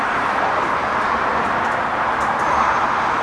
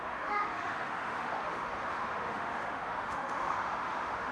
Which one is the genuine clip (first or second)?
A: first